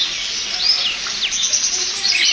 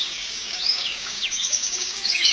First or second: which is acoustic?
first